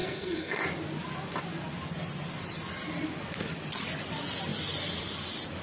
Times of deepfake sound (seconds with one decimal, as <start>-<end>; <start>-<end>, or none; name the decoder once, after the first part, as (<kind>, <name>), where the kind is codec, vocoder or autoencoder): 0.0-0.6 (codec, SNAC)